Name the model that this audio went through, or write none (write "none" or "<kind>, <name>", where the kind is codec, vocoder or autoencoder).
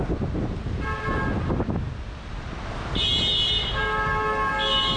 none